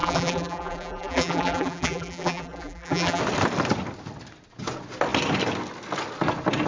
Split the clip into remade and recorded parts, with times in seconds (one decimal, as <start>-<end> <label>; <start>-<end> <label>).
0.0-3.2 remade; 3.2-6.7 recorded